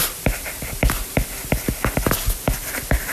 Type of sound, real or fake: real